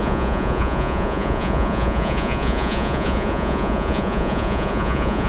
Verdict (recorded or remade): remade